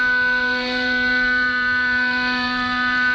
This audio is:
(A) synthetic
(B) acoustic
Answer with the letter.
A